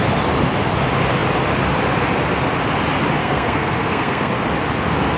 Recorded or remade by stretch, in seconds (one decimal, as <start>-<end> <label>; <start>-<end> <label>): 0.0-3.2 recorded; 3.2-4.4 remade; 4.4-5.2 recorded